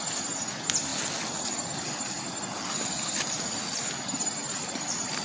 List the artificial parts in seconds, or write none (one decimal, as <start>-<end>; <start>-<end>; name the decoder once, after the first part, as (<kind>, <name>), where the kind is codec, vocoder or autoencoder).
none